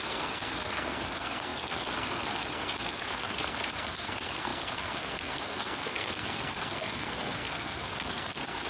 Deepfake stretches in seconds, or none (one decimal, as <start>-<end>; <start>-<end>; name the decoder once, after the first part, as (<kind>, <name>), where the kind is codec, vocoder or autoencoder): 0.0-8.7 (codec, SNAC)

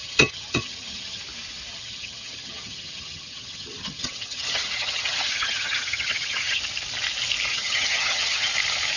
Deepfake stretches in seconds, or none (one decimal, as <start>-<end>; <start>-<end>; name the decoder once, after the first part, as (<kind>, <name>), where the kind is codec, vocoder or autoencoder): 0.0-1.2 (vocoder, HiFi-GAN); 1.7-6.6; 7.5-8.5